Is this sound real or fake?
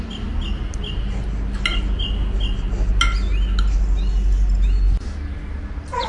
real